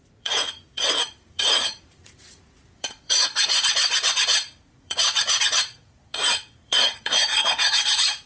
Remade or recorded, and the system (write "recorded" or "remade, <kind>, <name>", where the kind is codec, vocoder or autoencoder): remade, vocoder, Vocos